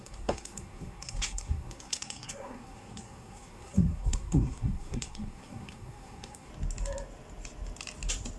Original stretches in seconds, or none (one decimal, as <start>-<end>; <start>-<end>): 6.5-8.4